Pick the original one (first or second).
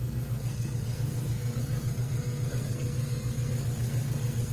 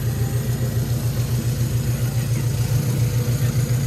second